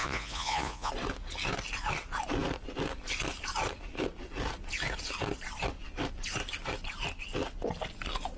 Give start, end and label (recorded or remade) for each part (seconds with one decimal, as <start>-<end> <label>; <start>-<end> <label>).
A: 0.0-0.9 remade; 0.9-8.4 recorded